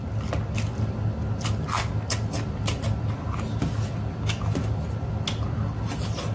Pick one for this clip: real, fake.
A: real